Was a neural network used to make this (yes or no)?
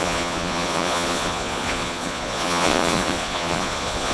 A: yes